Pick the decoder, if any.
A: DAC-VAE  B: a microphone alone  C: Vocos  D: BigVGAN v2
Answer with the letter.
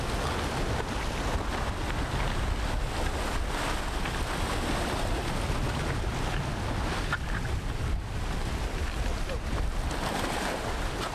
B